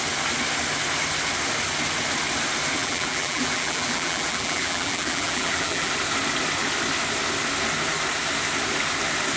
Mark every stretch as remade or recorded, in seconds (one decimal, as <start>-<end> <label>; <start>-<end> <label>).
0.0-2.8 recorded; 2.8-5.9 remade; 5.9-9.4 recorded

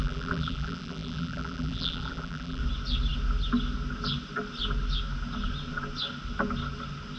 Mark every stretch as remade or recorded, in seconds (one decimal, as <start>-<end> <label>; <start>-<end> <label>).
0.0-2.6 remade; 2.6-7.2 recorded

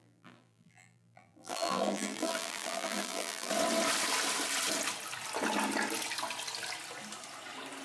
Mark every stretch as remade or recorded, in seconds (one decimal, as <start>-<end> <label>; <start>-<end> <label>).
0.0-3.5 remade; 3.5-7.8 recorded

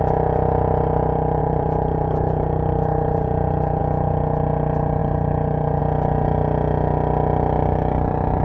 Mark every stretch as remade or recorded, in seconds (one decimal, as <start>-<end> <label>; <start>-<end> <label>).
0.0-1.4 recorded; 1.4-3.8 remade; 3.8-5.0 recorded; 5.0-5.8 remade; 5.8-8.4 recorded

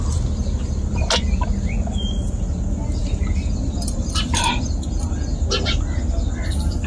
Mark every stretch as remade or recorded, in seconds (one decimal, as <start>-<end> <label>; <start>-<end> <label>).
0.0-3.0 recorded; 3.0-4.6 remade; 4.6-6.9 recorded